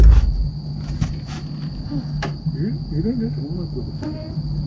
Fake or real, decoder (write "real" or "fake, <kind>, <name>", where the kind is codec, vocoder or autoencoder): real